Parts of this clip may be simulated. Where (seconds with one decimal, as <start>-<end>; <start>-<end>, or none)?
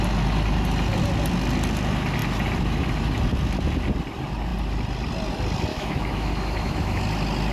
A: 5.7-7.0